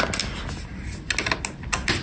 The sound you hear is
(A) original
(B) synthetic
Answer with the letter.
A